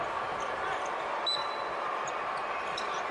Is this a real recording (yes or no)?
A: yes